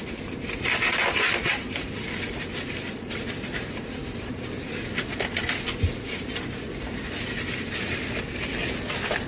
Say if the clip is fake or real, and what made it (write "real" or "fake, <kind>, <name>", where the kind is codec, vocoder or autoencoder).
fake, vocoder, BigVGAN v2